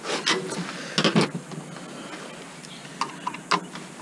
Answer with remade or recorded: recorded